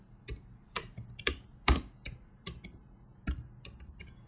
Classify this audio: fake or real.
fake